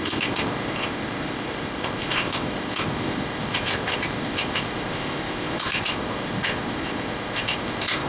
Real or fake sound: fake